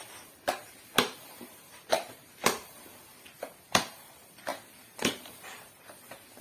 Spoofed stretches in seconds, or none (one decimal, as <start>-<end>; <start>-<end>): 0.0-6.4

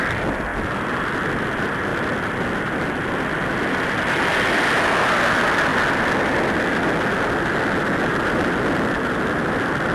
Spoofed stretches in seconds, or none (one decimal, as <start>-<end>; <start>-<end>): none

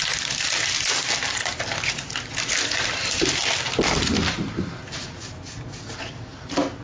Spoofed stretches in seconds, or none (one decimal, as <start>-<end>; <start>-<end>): 0.0-3.7; 5.9-6.8

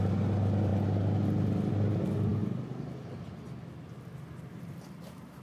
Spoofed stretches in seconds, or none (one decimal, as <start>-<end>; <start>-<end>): none